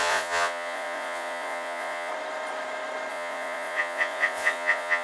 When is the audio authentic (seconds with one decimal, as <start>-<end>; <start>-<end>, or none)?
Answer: 2.1-3.1